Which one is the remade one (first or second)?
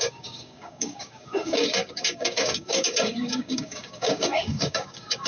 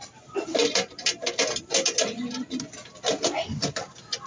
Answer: first